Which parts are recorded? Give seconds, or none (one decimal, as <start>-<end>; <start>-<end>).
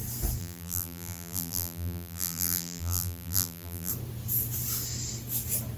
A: 0.0-0.4; 3.9-5.8